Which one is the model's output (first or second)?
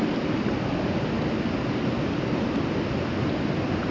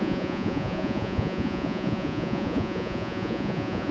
second